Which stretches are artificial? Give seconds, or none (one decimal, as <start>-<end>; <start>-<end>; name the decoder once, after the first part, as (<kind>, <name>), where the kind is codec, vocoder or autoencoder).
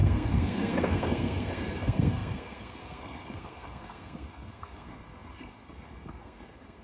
0.0-6.8 (codec, SNAC)